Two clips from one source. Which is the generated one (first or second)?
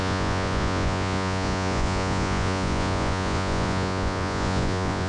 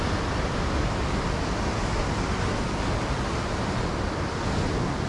first